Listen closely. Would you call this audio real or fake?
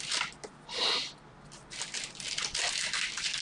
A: real